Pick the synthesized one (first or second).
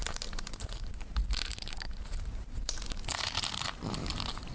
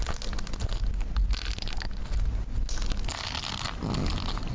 first